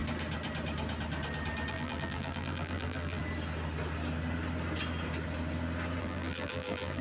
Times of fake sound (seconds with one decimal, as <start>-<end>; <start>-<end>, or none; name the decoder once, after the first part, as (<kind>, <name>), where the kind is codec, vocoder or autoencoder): 1.7-3.2 (vocoder, BigVGAN v2); 6.0-7.0